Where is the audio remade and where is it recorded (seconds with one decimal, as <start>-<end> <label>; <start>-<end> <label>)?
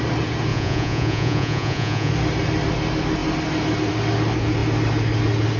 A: 0.0-0.5 recorded; 0.5-2.1 remade; 2.1-5.6 recorded